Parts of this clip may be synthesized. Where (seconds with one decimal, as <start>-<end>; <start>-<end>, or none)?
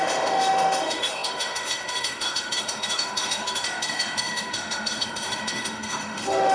0.0-6.5